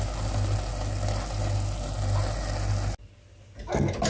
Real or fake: real